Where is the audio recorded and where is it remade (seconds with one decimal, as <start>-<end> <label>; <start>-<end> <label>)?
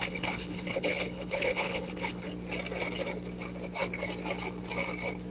0.0-2.3 remade; 2.3-5.3 recorded